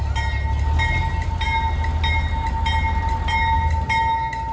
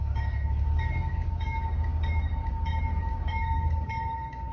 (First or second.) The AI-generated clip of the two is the second